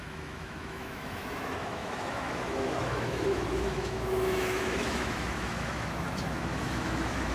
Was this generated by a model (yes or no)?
yes